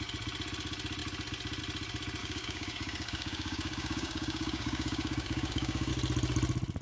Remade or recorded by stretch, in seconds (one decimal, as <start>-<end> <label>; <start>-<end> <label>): 0.0-2.2 recorded; 2.2-5.9 remade; 5.9-6.8 recorded